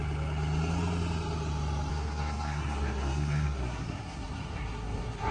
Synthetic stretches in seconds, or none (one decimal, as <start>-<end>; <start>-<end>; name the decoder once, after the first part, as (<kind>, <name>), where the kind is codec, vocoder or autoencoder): 1.9-5.3 (codec, SNAC)